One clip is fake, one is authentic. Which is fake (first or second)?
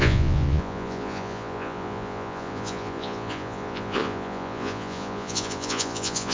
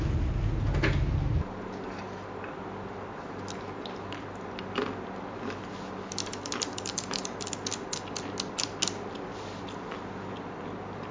first